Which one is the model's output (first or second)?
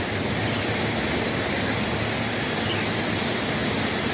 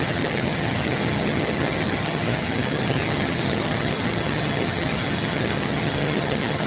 second